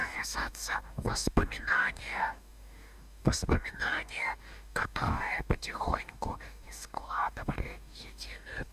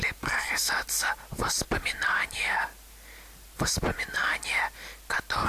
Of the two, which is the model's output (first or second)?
first